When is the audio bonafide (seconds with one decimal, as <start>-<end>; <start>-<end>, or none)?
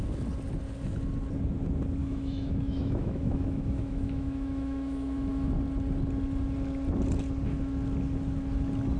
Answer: 0.0-2.0; 5.5-9.0